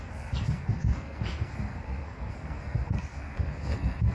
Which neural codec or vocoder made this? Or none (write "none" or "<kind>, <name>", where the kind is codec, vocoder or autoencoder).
codec, SNAC